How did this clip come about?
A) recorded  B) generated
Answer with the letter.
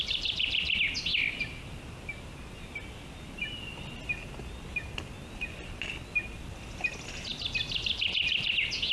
A